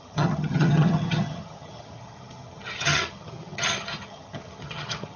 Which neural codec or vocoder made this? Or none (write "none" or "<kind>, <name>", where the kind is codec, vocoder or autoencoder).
vocoder, HiFi-GAN